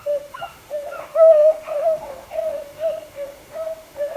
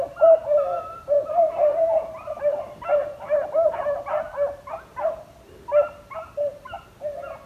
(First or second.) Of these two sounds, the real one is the second